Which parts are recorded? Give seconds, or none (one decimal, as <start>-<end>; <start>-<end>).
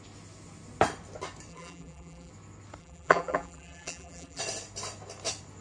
0.0-1.5; 2.3-2.8; 4.4-5.6